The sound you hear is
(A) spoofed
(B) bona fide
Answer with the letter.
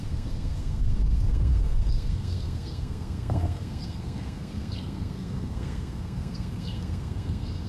A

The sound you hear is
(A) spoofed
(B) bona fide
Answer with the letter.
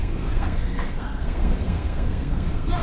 A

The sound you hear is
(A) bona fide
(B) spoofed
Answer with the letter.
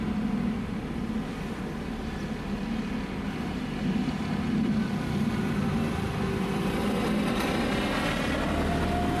A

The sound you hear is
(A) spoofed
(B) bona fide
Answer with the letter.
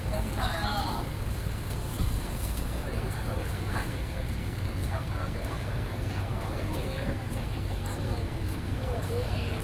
A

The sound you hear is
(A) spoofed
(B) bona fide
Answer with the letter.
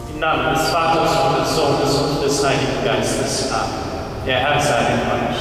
B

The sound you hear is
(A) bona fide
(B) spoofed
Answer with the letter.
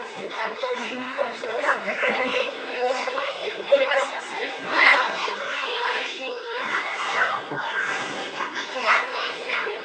B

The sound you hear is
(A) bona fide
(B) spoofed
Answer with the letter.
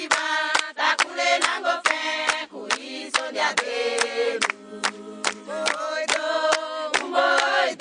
A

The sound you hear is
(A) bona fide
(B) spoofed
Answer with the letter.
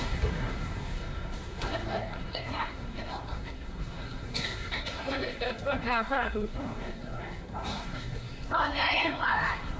B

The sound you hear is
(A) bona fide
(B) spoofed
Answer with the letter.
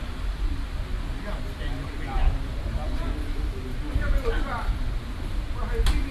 A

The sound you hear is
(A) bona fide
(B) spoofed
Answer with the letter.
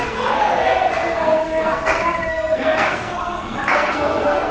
B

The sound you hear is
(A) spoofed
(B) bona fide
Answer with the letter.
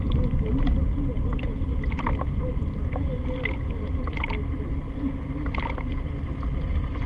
B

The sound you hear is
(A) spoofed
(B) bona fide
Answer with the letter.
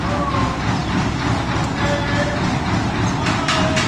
B